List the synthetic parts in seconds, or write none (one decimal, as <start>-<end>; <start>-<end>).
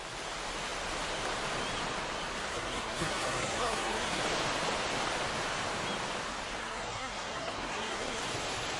2.5-4.2; 6.6-8.2